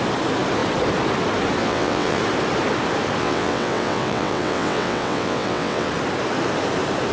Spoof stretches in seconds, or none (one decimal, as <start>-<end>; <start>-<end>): 1.6-2.2; 3.2-5.9